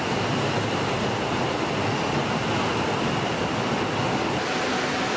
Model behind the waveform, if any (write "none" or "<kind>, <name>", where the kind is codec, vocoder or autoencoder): none